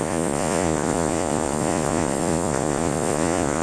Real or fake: fake